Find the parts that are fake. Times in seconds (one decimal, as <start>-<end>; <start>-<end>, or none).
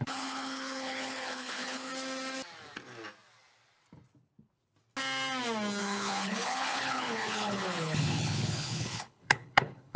0.0-1.9; 5.8-10.0